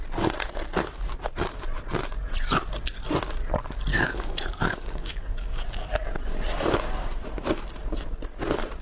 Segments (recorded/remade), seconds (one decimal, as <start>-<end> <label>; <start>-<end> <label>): 0.0-3.9 recorded; 3.9-6.1 remade; 6.1-8.8 recorded